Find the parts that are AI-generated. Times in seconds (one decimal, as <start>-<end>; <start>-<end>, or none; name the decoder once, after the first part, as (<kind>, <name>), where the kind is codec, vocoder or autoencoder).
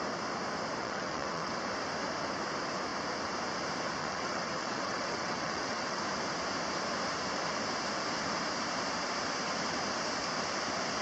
0.8-1.5 (vocoder, WaveNeXt); 4.0-6.0